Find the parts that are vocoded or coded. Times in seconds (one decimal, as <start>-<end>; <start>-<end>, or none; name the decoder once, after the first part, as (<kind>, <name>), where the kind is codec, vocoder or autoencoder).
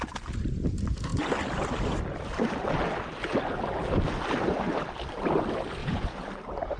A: 5.8-6.3 (vocoder, Vocos)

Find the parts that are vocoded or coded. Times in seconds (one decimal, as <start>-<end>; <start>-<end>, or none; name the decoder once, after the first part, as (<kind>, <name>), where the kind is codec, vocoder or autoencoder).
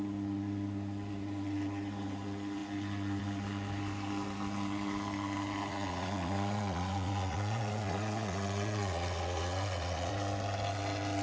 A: 5.7-10.1 (vocoder, Vocos)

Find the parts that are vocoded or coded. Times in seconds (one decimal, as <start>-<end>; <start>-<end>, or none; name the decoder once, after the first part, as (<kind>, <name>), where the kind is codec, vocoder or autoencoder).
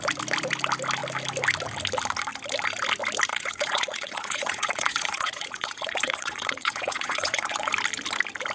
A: 3.3-7.7 (vocoder, Vocos)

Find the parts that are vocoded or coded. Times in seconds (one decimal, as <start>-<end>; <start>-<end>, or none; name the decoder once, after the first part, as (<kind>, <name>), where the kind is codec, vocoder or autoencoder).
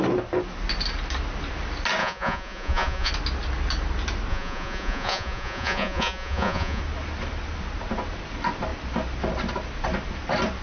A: 2.0-3.1 (vocoder, Vocos); 4.3-6.8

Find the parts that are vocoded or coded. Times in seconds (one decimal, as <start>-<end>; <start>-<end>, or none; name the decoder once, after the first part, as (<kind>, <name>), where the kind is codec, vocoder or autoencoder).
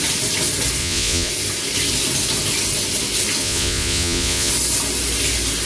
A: 0.8-1.3 (vocoder, Vocos); 3.4-4.5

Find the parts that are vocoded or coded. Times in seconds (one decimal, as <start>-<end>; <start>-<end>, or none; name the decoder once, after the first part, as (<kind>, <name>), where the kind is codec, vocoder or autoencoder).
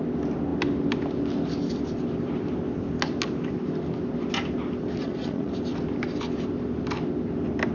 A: 5.0-5.5 (vocoder, Vocos)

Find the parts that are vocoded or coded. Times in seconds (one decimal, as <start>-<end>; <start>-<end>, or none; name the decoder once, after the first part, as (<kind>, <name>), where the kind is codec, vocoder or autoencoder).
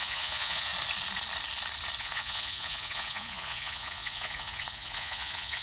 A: 0.0-0.7 (vocoder, Vocos); 2.0-5.6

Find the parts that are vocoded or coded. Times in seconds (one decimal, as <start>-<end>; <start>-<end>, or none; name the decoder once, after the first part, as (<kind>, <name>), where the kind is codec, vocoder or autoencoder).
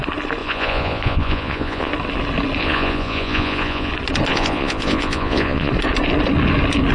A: 0.4-1.9 (vocoder, Vocos); 2.6-3.9; 4.3-5.7